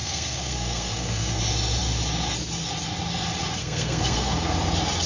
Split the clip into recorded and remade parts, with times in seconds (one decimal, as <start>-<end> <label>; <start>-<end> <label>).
0.0-1.4 remade; 1.4-3.6 recorded; 3.6-4.5 remade; 4.5-5.1 recorded